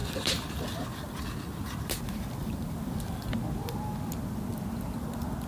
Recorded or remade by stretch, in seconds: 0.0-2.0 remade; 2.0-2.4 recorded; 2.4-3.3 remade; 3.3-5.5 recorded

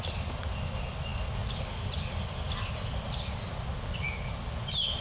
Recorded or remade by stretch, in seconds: 0.0-5.0 recorded

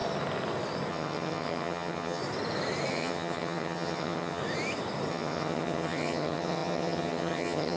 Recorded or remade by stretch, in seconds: 0.0-0.9 recorded; 0.9-2.2 remade; 2.2-2.9 recorded; 2.9-4.4 remade; 4.4-5.1 recorded; 5.1-7.8 remade

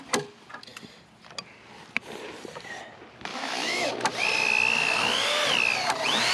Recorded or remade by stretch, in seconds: 0.0-3.3 recorded; 3.3-3.9 remade; 3.9-6.3 recorded

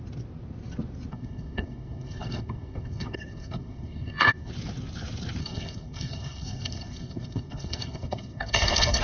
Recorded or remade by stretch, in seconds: 0.0-1.1 recorded; 1.1-4.5 remade; 4.5-5.4 recorded; 5.4-9.0 remade

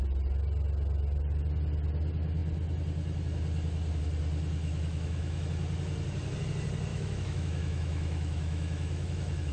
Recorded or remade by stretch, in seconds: 0.0-4.6 recorded; 4.6-5.5 remade; 5.5-6.9 recorded; 6.9-9.5 remade